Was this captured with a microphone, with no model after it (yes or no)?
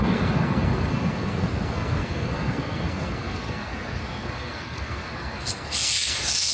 no